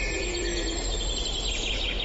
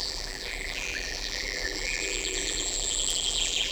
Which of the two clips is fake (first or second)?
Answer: second